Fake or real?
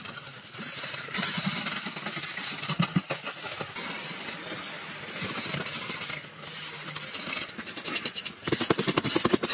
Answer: fake